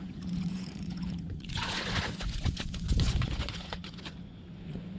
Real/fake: fake